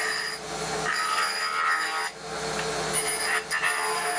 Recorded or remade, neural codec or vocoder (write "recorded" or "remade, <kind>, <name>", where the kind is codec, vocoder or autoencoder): recorded